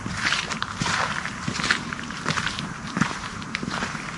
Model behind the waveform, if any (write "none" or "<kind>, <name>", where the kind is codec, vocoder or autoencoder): vocoder, BigVGAN v2